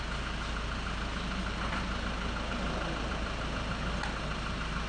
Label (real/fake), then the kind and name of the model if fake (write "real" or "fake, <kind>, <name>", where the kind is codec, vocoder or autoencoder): real